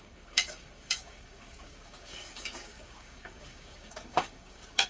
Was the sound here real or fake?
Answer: fake